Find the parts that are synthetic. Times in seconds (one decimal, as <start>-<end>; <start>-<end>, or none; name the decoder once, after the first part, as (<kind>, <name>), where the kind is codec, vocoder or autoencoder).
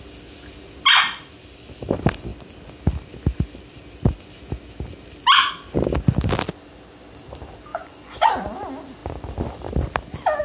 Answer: 7.7-8.3 (vocoder, Vocos)